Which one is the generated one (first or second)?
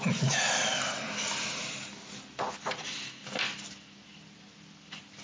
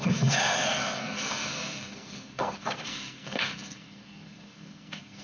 second